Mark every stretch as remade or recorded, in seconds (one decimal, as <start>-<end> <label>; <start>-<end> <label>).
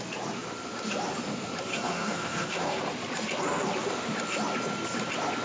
0.0-1.7 recorded; 1.7-2.8 remade; 2.8-5.4 recorded